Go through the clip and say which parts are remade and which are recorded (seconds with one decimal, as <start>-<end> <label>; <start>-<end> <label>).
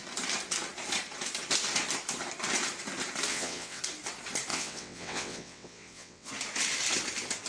0.0-3.3 recorded; 3.3-3.8 remade; 3.8-4.5 recorded; 4.5-6.3 remade; 6.3-7.5 recorded